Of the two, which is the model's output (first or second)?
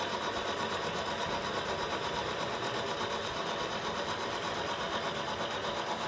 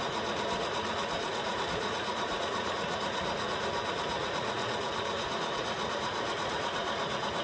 second